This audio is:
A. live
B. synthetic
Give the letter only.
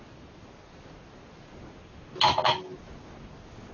A